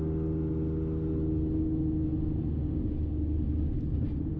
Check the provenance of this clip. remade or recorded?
recorded